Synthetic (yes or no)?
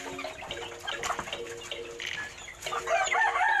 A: no